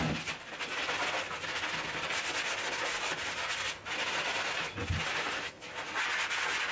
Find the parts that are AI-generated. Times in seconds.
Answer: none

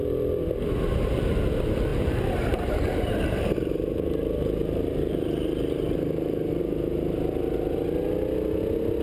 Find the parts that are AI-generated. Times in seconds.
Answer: 1.9-6.6 (vocoder, BigVGAN v2)

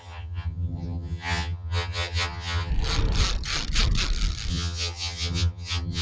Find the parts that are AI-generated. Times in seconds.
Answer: 0.0-2.7 (vocoder, HiFi-GAN); 4.5-6.0

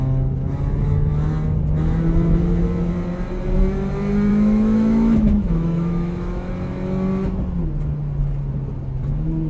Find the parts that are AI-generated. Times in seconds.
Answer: 4.3-6.5 (autoencoder, DAC-VAE)

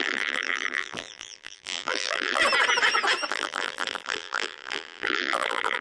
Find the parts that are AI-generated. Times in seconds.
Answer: 0.0-2.4 (vocoder, BigVGAN v2); 3.3-5.8

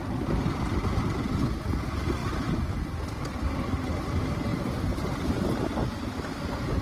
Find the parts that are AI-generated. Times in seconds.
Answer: 4.5-5.7 (vocoder, BigVGAN v2)

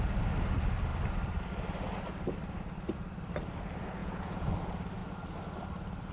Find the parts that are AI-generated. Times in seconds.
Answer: 4.0-4.5 (vocoder, Vocos)

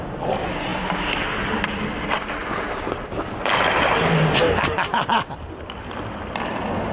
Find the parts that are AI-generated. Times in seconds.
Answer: 5.1-5.8 (vocoder, BigVGAN v2)